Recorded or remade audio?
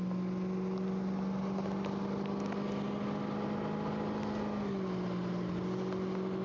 recorded